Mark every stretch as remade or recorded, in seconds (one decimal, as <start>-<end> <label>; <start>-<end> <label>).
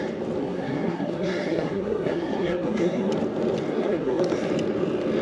0.0-0.4 recorded; 0.4-3.1 remade; 3.1-3.7 recorded; 3.7-4.3 remade; 4.3-5.2 recorded